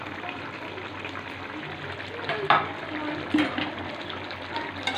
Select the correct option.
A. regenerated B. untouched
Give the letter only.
B